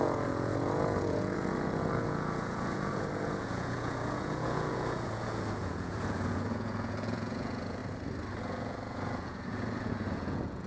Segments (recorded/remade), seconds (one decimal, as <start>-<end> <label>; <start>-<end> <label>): 0.0-7.8 remade; 7.8-8.4 recorded; 8.4-10.7 remade

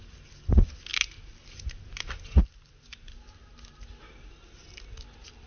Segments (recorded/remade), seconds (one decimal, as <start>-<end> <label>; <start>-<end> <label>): 0.0-5.5 recorded

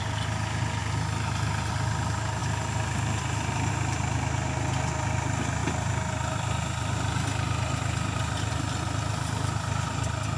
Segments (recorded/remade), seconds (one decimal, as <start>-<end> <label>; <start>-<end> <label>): 0.0-10.4 recorded